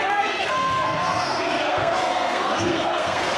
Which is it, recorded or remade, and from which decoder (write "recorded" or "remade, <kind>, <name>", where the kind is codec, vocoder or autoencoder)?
remade, codec, SNAC